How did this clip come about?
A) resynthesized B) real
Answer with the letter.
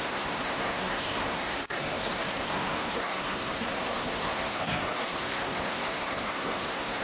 A